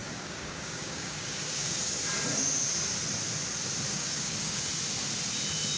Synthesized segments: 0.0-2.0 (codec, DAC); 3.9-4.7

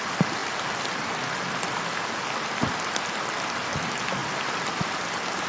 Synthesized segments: none

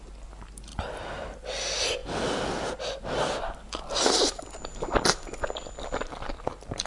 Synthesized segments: none

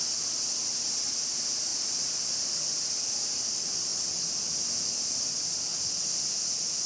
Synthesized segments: none

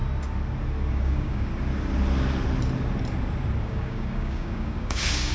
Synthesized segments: 0.9-1.5 (codec, DAC); 3.6-5.3